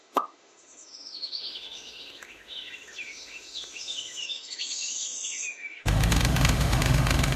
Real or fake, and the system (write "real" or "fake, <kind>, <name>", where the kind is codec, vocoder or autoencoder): fake, autoencoder, DAC-VAE